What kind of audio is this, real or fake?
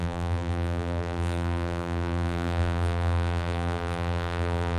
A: fake